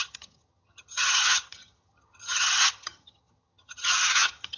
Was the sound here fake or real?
fake